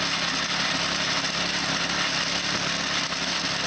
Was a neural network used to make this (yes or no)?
no